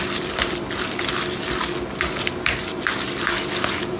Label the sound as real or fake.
real